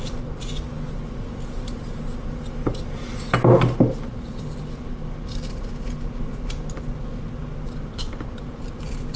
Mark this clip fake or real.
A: real